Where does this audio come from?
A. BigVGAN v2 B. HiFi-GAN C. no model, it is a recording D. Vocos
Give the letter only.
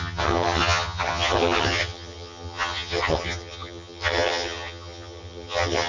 B